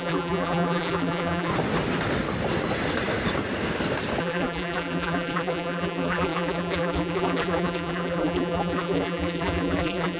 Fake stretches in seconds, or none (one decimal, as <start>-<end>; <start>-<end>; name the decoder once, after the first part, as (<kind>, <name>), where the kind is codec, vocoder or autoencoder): 0.0-1.5 (vocoder, BigVGAN v2); 4.2-10.2